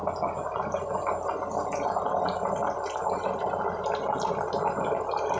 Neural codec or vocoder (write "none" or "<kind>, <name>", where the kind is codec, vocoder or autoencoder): none